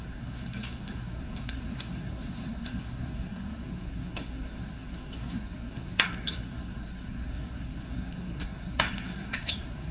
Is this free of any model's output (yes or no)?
no